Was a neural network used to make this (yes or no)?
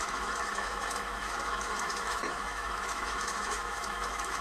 yes